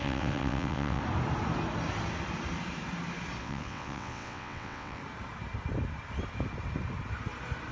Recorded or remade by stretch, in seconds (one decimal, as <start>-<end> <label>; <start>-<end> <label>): 0.0-1.0 remade; 1.0-3.4 recorded; 3.4-5.0 remade; 5.0-7.7 recorded